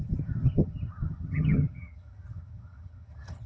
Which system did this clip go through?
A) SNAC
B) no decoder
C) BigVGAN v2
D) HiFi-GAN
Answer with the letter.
D